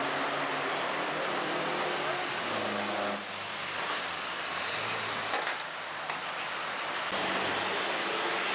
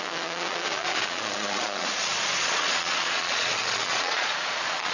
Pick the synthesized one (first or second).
second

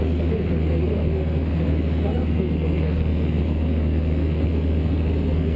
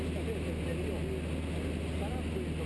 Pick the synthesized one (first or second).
first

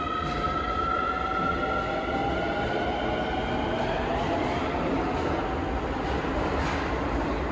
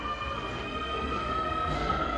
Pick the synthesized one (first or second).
second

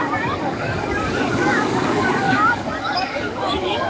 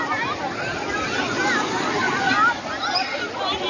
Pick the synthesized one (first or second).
first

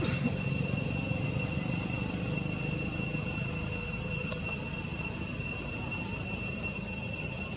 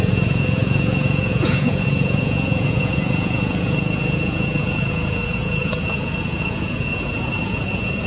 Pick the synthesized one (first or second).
second